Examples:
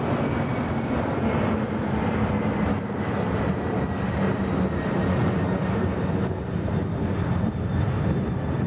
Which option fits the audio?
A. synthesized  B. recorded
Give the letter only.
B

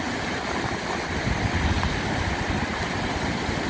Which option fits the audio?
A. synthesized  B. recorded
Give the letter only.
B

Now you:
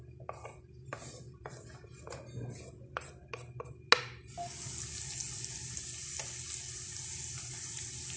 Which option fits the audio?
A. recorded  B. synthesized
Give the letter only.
A